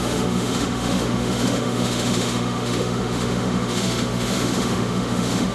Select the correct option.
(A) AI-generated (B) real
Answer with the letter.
A